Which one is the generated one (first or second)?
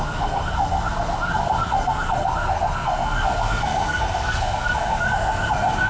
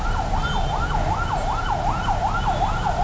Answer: first